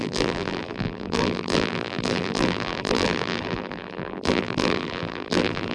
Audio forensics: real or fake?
fake